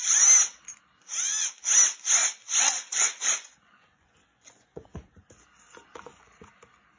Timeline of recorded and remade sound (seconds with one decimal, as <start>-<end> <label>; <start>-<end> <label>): 0.0-2.4 recorded; 2.4-5.3 remade; 5.3-5.9 recorded; 5.9-6.5 remade; 6.5-7.0 recorded